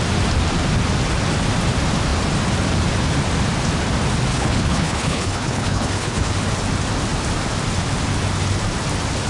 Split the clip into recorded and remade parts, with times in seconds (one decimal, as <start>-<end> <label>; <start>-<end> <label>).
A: 0.0-4.3 recorded; 4.3-6.3 remade; 6.3-9.3 recorded